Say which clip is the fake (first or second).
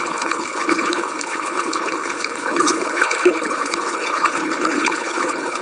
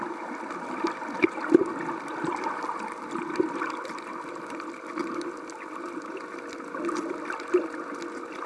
first